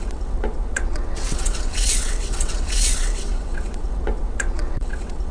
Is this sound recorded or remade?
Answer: remade